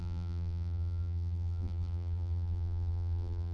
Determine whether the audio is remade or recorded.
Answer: remade